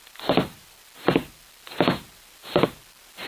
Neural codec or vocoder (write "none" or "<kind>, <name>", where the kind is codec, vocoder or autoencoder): none